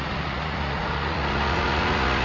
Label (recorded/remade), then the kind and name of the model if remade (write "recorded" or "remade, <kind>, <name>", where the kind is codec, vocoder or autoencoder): remade, vocoder, Vocos